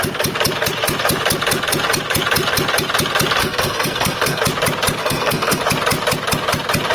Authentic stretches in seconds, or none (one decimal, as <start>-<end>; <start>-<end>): 0.0-3.4; 4.4-5.0; 5.6-6.9